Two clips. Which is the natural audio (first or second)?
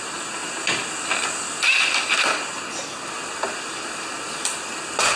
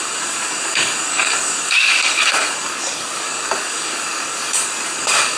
first